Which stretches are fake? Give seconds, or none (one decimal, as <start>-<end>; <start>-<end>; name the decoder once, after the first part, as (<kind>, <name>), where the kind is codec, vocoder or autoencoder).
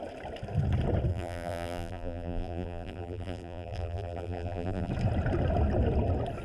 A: 1.1-4.9 (vocoder, BigVGAN v2)